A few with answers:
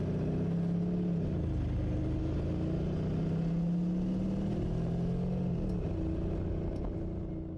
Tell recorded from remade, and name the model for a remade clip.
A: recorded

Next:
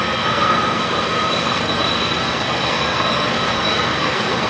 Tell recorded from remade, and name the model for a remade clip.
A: remade, codec, SNAC